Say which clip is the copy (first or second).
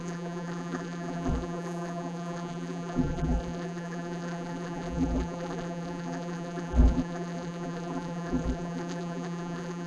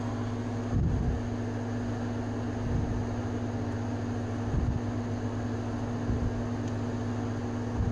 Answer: first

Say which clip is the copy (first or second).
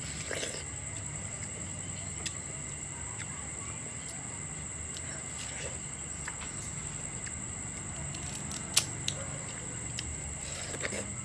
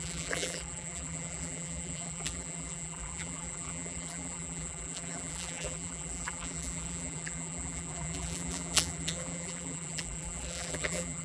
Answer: second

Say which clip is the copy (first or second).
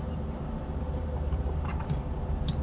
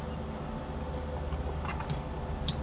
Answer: first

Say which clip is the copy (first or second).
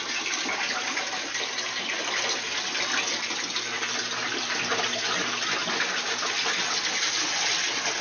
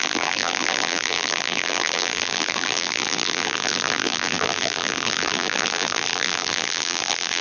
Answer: second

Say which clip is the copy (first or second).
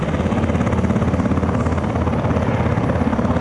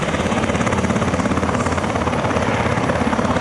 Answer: second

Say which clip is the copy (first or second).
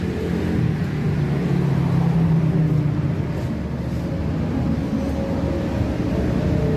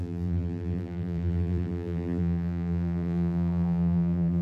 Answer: second